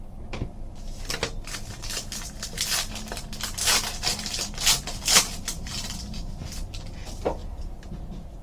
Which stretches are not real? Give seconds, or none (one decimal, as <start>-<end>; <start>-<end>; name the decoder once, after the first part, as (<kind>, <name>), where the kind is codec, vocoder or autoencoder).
7.4-7.9 (vocoder, Vocos)